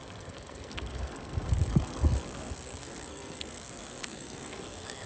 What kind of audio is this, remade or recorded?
remade